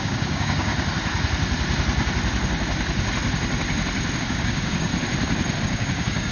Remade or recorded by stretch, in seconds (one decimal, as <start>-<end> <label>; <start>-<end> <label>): 0.0-0.7 remade; 0.7-4.2 recorded; 4.2-4.9 remade; 4.9-5.6 recorded; 5.6-6.3 remade